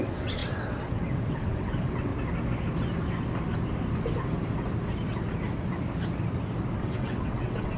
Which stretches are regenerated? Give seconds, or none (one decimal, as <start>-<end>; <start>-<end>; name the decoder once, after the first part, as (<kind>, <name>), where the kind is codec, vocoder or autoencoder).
0.0-2.1 (vocoder, WaveNeXt); 6.8-7.8